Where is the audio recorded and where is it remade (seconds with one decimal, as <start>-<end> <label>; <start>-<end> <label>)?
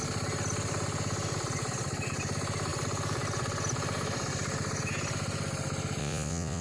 0.0-6.0 recorded; 6.0-6.6 remade